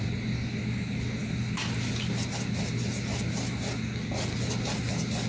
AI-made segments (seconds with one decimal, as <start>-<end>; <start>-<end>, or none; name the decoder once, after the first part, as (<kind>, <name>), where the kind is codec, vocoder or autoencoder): none